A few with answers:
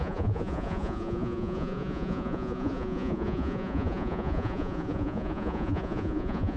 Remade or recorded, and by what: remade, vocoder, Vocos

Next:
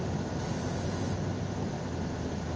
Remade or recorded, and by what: recorded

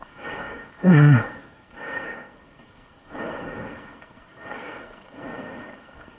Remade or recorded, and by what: remade, codec, SNAC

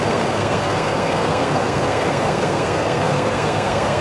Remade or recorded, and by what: remade, codec, SNAC